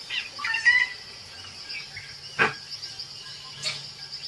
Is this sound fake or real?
real